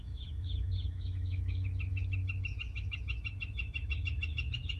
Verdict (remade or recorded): remade